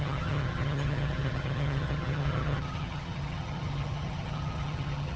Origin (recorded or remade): remade